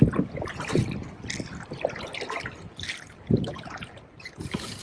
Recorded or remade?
recorded